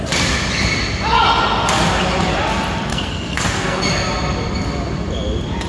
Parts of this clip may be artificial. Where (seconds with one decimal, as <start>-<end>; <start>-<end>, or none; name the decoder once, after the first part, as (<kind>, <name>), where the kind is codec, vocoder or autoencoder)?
2.9-3.9 (codec, SNAC)

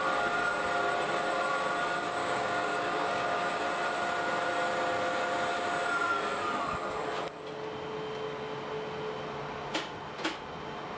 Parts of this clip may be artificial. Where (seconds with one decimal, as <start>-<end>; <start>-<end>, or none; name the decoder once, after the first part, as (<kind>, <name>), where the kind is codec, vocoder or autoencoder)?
2.2-3.6 (codec, DAC)

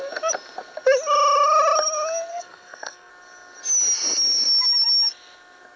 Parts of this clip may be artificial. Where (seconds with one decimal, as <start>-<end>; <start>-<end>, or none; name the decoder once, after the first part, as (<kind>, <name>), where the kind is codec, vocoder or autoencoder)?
2.3-3.1 (codec, SNAC)